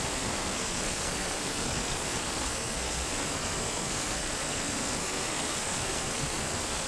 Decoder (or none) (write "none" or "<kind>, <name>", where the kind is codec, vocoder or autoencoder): codec, SNAC